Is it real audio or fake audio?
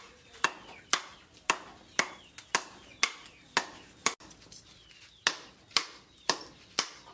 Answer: real